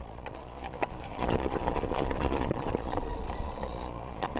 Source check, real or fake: fake